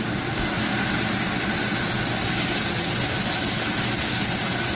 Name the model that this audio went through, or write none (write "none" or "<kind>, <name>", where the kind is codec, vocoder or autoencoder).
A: none